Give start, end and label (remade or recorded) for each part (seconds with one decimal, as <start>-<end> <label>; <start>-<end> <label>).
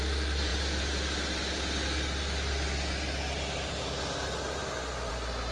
0.0-5.5 recorded